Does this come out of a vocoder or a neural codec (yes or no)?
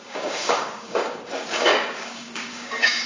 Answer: yes